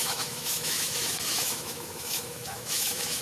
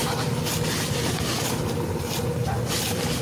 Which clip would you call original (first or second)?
second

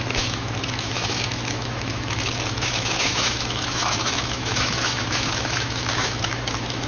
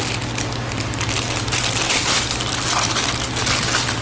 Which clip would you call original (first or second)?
second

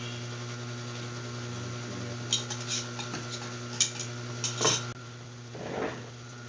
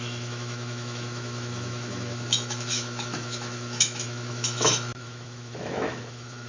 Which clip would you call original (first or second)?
first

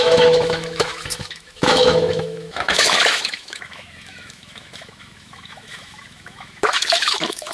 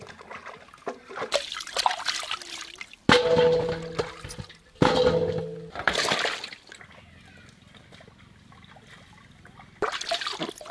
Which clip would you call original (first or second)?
second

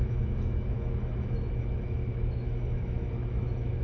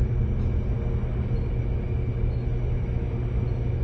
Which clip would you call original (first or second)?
second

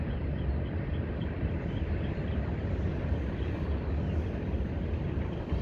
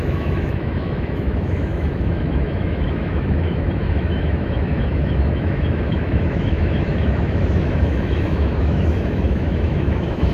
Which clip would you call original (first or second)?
first